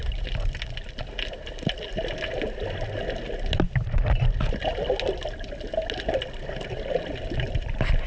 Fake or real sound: real